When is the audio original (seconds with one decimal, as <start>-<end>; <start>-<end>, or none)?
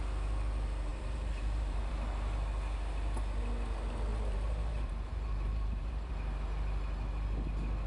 0.0-0.9; 1.9-4.1; 6.1-7.9